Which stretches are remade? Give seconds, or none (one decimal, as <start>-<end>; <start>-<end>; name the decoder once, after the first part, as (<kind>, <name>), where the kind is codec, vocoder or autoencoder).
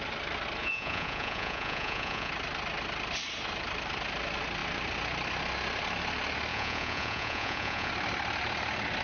0.6-2.3 (vocoder, Vocos); 6.5-7.9